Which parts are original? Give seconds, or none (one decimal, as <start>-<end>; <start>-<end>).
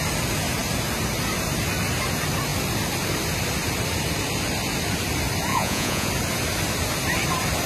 0.0-5.5; 6.1-7.7